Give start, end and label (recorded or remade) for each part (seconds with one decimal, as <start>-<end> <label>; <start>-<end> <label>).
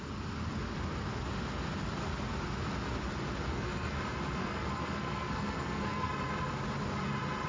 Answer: 0.0-3.5 recorded; 3.5-4.0 remade; 4.0-4.4 recorded; 4.4-6.1 remade; 6.1-7.5 recorded